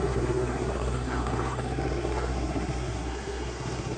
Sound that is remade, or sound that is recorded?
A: remade